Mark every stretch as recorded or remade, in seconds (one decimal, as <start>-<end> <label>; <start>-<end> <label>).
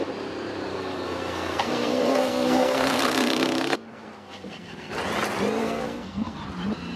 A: 0.0-0.7 recorded; 0.7-4.9 remade; 4.9-5.6 recorded; 5.6-6.4 remade; 6.4-7.0 recorded